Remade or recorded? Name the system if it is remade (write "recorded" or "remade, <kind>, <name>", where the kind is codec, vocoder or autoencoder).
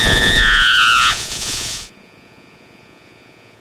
remade, vocoder, Vocos